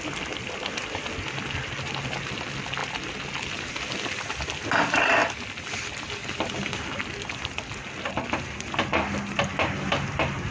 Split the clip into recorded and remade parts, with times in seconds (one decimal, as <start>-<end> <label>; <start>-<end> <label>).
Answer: 0.0-10.5 recorded